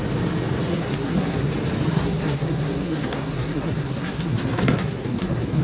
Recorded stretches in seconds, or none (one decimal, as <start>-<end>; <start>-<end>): 0.0-0.7; 1.5-1.9